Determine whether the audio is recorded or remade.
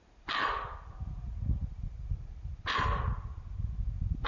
recorded